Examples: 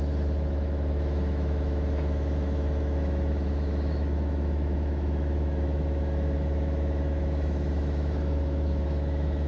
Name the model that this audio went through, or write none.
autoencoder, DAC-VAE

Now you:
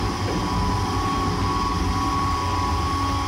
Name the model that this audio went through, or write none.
none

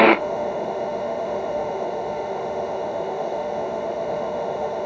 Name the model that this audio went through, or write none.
autoencoder, DAC-VAE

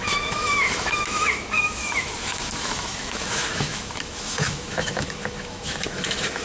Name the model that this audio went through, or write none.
autoencoder, DAC-VAE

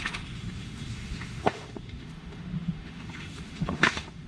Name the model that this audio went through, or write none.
autoencoder, DAC-VAE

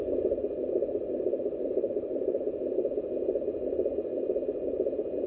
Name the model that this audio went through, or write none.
none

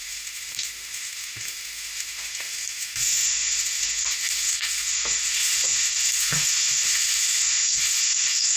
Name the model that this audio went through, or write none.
autoencoder, DAC-VAE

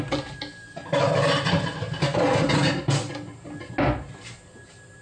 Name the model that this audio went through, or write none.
none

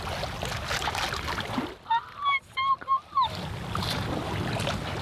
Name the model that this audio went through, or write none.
none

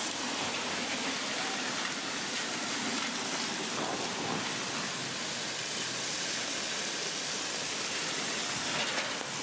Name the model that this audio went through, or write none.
none